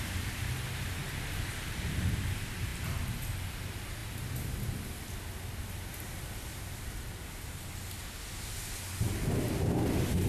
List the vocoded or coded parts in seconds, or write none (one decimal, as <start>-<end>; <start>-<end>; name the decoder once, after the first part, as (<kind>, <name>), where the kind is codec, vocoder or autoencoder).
none